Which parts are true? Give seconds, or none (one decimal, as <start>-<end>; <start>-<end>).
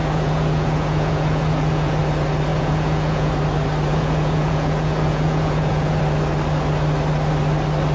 2.0-2.5; 3.3-3.9; 6.0-7.9